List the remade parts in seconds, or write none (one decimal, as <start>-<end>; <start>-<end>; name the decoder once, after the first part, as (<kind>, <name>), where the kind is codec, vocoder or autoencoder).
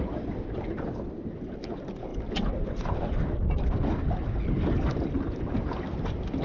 none